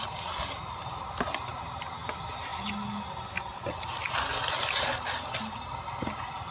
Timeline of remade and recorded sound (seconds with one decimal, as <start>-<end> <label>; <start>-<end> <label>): 0.0-6.5 recorded

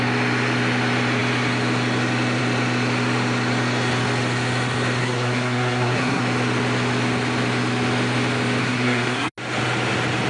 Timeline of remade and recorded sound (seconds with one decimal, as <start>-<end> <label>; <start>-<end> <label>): 0.0-5.0 recorded; 5.0-6.2 remade; 6.2-8.6 recorded; 8.6-9.3 remade; 9.3-10.3 recorded

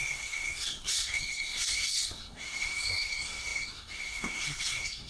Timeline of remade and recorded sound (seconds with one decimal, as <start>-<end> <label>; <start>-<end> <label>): 0.0-5.1 remade

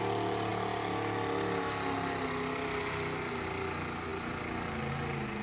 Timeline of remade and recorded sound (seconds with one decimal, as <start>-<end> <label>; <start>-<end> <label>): 0.0-5.4 recorded